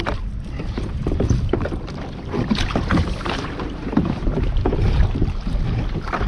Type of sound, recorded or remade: remade